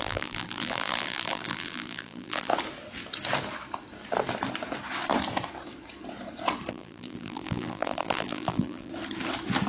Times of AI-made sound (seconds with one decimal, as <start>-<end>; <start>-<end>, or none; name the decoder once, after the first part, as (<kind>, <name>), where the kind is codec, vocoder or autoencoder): 0.0-2.5 (vocoder, BigVGAN v2); 6.7-8.9